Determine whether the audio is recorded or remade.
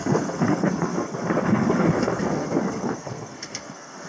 remade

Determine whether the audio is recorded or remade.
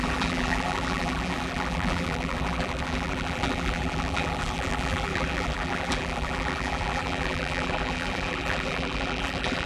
remade